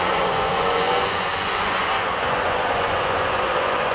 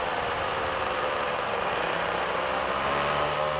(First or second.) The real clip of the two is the second